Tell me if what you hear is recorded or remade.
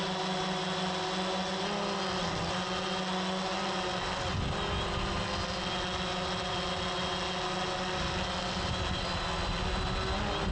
recorded